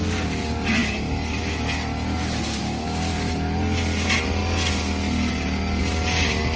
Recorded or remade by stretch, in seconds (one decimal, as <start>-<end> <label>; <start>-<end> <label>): 0.0-6.6 recorded